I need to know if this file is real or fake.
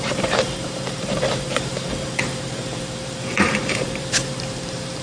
fake